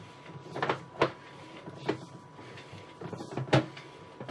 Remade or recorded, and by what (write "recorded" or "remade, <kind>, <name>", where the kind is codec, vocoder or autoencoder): recorded